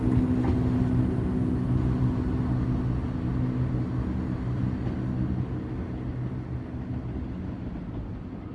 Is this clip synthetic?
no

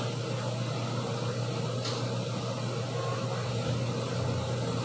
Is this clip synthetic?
no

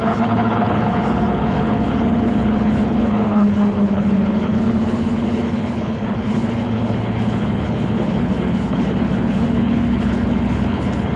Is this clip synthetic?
yes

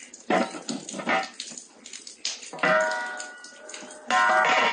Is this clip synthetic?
no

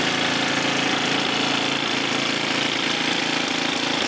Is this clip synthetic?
no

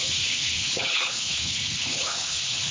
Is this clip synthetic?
yes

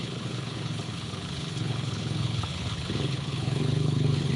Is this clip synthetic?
yes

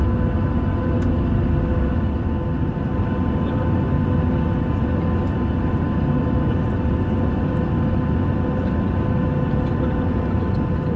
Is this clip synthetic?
no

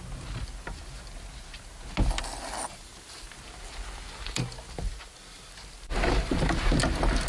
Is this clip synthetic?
no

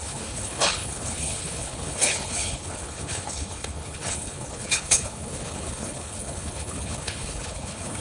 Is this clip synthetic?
yes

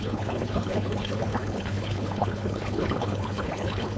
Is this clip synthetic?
yes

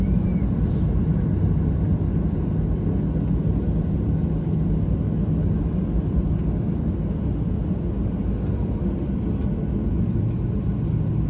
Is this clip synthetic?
no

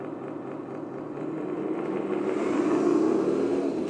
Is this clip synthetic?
no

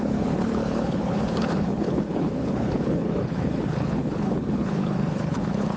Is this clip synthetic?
yes